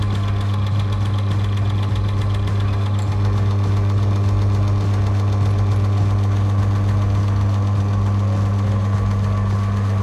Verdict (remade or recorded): recorded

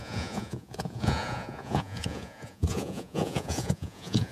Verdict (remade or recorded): remade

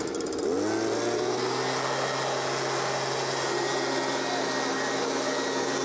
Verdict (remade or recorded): recorded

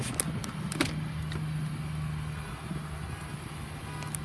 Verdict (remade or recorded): recorded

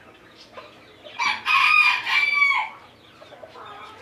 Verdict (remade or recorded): recorded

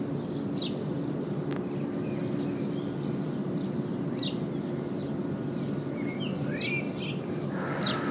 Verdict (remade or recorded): recorded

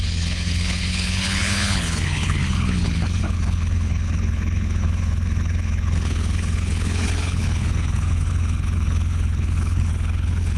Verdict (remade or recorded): remade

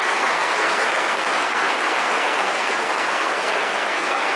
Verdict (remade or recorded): remade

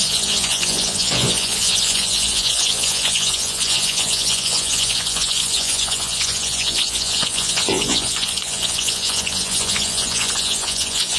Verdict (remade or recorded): remade